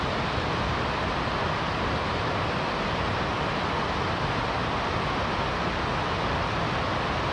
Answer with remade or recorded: recorded